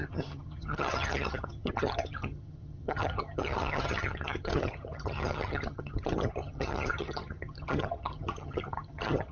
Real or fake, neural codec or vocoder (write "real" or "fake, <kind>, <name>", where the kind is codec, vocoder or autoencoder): fake, vocoder, HiFi-GAN